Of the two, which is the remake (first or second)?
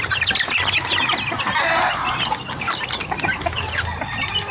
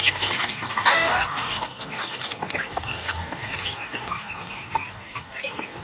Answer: second